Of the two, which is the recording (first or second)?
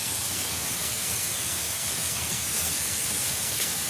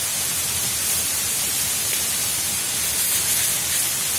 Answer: second